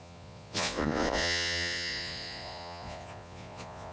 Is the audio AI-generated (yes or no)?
yes